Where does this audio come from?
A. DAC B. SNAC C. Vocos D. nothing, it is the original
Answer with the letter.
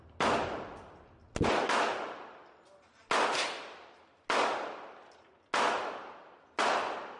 D